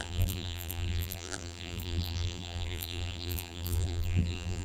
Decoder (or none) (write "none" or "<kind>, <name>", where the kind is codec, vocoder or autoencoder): vocoder, BigVGAN v2